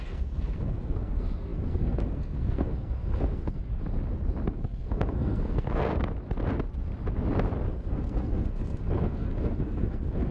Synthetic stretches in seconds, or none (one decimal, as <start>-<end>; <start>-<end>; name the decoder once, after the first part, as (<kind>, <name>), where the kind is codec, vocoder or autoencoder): 0.0-3.7 (codec, SNAC); 4.5-5.9; 7.7-10.3